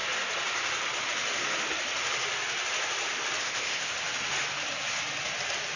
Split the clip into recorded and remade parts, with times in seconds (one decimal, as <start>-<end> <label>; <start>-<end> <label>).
0.0-3.4 recorded; 3.4-3.9 remade; 3.9-5.8 recorded